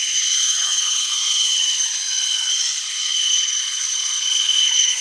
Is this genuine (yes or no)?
no